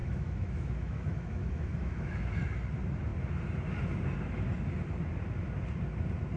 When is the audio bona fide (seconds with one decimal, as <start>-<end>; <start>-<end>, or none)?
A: 2.3-6.4